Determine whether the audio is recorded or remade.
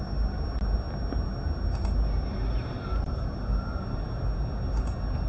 recorded